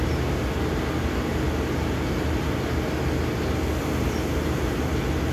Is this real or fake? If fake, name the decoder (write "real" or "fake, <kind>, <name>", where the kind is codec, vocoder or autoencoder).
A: real